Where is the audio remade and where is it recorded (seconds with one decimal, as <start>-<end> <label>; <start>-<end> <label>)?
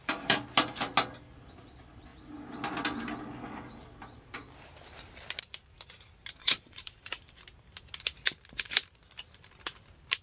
0.0-6.4 recorded; 6.4-7.1 remade; 7.1-10.2 recorded